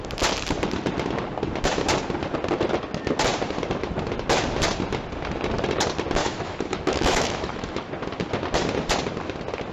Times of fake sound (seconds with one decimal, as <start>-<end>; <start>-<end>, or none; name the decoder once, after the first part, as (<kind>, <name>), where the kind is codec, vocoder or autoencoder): 6.2-7.9 (autoencoder, DAC-VAE)